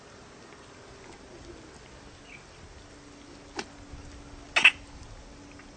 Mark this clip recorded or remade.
recorded